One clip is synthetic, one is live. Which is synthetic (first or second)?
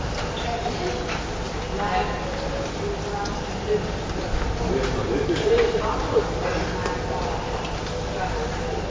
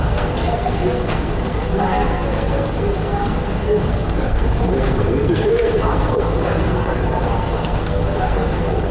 second